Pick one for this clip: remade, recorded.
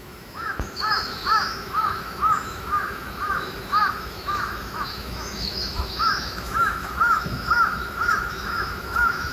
remade